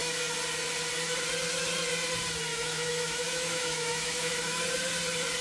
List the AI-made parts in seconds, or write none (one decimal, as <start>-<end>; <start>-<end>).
2.5-4.6